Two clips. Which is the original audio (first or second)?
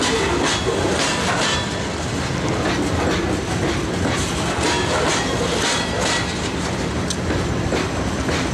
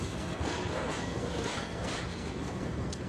first